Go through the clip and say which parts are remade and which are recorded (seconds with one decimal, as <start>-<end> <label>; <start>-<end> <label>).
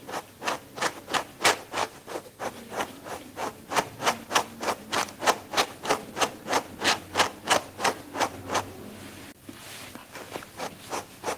0.0-1.8 recorded; 1.8-2.4 remade; 2.4-11.4 recorded